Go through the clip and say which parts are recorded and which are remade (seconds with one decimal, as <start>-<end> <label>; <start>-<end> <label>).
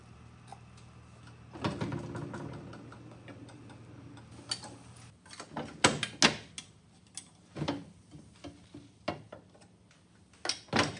0.0-11.0 recorded